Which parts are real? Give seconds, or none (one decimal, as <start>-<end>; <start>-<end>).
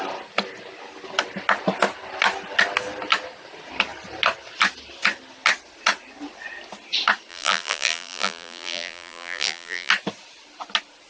0.0-7.3; 9.9-11.1